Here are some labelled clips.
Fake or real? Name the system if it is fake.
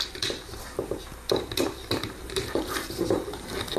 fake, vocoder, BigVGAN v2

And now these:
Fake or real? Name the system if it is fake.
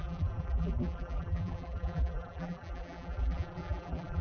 fake, vocoder, BigVGAN v2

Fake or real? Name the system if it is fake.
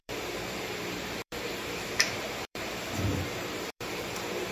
fake, vocoder, BigVGAN v2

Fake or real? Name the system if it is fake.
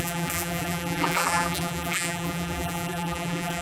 fake, vocoder, BigVGAN v2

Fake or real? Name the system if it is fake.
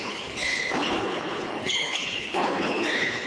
fake, codec, HILCodec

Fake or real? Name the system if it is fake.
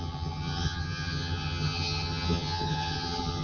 fake, vocoder, HiFi-GAN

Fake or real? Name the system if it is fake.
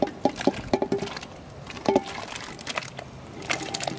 real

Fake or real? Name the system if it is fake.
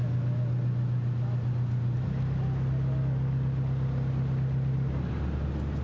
real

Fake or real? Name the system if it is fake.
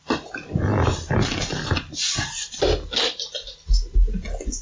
real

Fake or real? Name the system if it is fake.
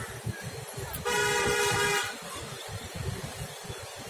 real